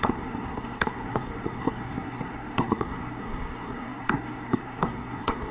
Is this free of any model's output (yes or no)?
no